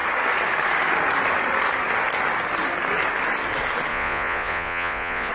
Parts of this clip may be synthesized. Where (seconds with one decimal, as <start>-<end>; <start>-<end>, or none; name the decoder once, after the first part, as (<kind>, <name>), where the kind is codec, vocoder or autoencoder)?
3.9-5.3 (vocoder, Vocos)